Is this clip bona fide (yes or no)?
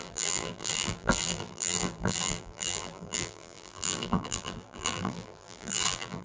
no